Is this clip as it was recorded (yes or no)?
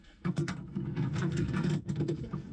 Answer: no